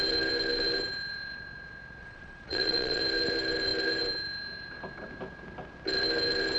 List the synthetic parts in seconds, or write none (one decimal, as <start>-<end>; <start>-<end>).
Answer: 2.0-3.0